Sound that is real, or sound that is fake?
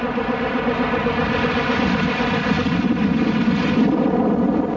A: real